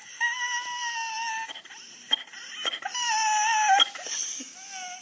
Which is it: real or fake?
real